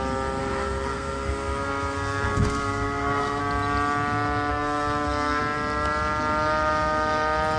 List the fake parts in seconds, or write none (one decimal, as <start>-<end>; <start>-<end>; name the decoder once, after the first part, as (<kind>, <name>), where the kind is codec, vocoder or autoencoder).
0.4-3.4 (codec, SNAC); 4.5-5.4